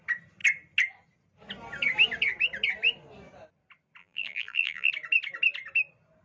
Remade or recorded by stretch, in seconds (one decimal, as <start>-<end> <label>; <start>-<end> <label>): 0.0-4.0 recorded; 4.0-4.9 remade; 4.9-6.2 recorded